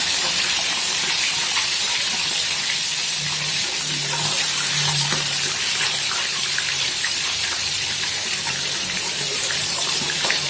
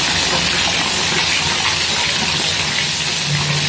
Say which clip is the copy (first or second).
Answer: first